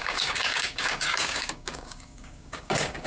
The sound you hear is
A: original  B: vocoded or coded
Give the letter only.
B